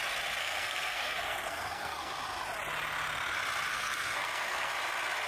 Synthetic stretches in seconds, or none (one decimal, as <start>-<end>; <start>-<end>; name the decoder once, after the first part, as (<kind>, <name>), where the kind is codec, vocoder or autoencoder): 0.4-2.1 (codec, SNAC); 3.7-4.7